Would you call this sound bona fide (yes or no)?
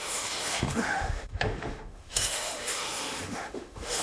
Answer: no